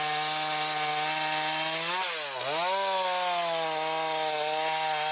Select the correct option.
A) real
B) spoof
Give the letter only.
A